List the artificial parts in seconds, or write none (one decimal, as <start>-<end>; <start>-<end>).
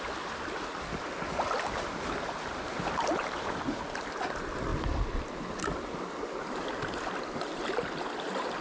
none